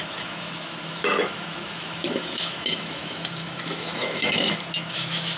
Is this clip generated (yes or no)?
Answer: yes